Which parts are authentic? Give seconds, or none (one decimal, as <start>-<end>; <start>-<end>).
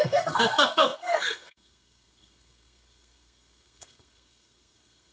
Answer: none